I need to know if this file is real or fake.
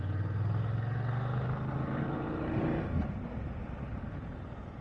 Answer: real